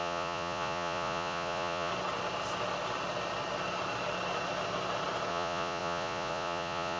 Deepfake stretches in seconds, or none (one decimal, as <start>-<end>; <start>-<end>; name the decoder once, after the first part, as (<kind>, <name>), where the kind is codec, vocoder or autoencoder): 0.0-1.9 (vocoder, Vocos); 5.3-7.0